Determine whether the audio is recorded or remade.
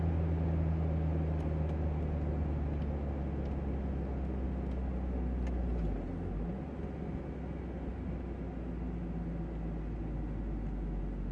recorded